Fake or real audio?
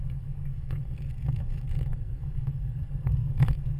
fake